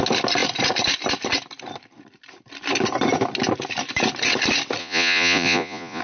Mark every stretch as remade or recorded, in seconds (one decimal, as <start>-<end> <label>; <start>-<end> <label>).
0.0-4.8 recorded; 4.8-6.0 remade